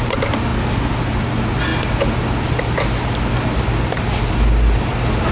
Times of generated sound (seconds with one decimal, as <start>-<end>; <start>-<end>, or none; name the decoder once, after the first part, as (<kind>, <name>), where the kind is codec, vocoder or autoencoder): 0.0-0.5 (vocoder, BigVGAN v2); 1.2-1.7